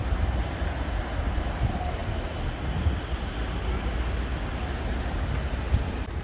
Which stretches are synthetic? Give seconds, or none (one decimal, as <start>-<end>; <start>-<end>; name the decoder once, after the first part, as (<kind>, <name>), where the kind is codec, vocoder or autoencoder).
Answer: 0.0-1.0 (vocoder, BigVGAN v2)